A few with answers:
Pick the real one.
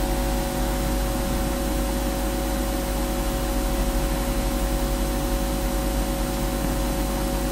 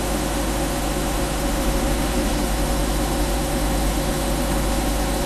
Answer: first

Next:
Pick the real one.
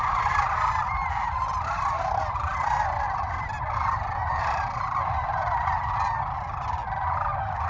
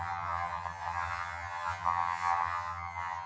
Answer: first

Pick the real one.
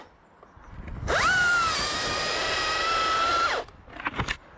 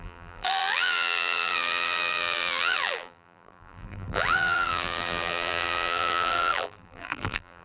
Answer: first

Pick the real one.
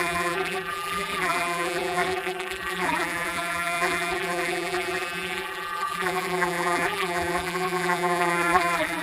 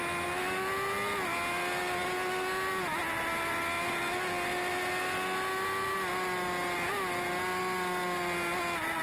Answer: second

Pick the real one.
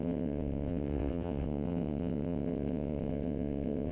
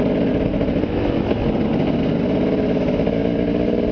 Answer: second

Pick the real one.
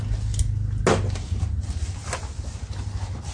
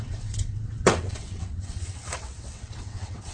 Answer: first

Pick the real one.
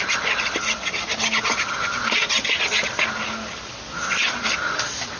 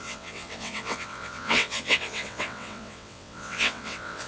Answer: first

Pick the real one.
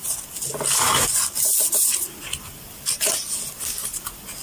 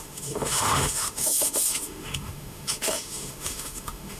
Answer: first